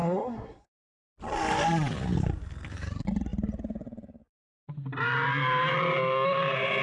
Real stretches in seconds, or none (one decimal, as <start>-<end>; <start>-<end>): 0.8-6.8